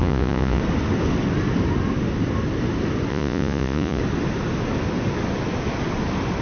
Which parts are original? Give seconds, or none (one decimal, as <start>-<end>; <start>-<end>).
0.6-3.1; 4.0-6.4